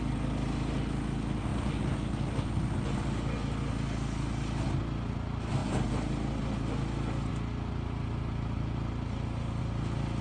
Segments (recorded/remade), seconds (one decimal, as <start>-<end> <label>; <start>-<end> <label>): 0.0-10.2 recorded